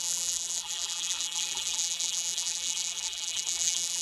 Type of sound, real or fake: fake